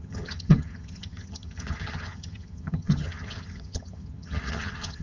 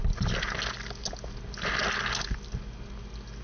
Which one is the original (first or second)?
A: second